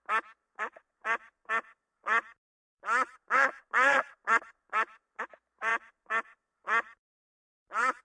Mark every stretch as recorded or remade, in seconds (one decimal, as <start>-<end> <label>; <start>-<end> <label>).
0.0-0.4 recorded; 0.4-5.2 remade; 5.2-5.7 recorded; 5.7-8.0 remade